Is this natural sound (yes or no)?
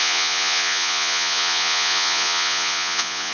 no